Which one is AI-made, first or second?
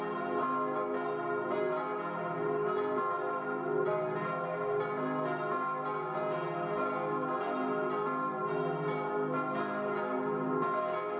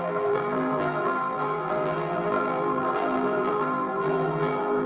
second